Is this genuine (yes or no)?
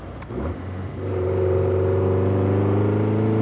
yes